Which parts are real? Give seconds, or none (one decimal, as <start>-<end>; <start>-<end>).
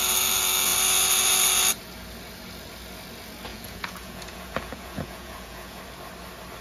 0.0-3.5; 5.8-6.6